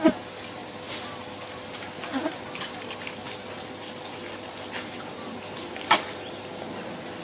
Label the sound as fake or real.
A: real